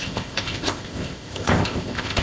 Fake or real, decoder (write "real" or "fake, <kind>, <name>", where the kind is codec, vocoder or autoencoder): fake, codec, ZipCodec